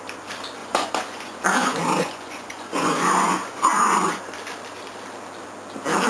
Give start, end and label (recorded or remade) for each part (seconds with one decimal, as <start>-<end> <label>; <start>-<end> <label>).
0.0-0.6 recorded; 0.6-4.2 remade; 4.2-6.1 recorded